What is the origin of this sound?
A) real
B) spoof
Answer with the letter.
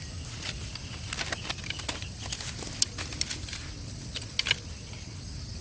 A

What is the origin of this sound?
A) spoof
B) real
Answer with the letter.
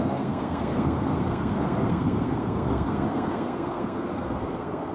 A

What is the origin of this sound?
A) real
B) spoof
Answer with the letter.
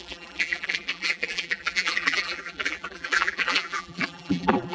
B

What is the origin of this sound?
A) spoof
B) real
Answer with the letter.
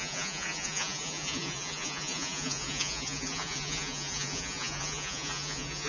A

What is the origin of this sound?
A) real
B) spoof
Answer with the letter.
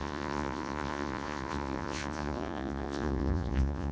B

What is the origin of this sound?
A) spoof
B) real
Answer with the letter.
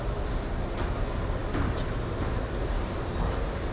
B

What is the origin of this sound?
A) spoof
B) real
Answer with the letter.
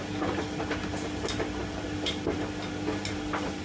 B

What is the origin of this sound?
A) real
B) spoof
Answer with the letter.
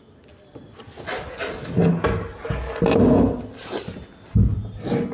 A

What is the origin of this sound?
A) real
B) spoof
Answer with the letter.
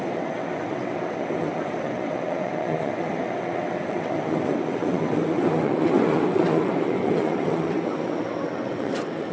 B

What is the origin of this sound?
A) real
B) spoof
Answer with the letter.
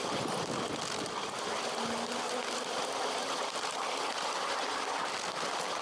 A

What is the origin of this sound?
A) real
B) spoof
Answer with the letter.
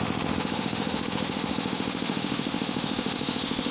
B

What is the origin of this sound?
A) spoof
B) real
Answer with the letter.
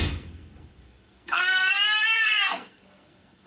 A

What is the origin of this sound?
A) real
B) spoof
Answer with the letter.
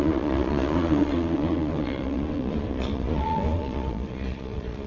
B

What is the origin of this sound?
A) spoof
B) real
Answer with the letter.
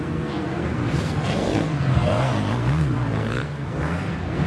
A